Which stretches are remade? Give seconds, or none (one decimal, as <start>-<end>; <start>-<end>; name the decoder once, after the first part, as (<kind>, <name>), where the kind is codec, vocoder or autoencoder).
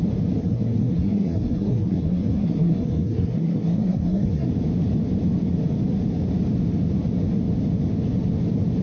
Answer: 0.4-4.5 (codec, SNAC)